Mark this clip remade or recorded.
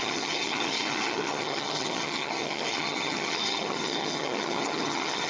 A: remade